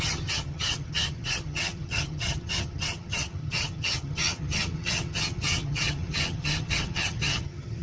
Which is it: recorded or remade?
remade